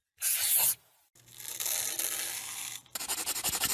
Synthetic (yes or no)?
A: no